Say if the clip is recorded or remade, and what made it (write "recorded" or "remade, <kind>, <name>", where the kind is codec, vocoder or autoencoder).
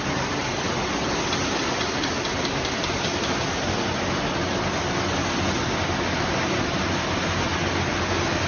recorded